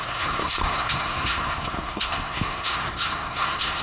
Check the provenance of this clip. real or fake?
fake